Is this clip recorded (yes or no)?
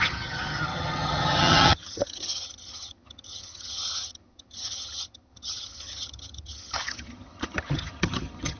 no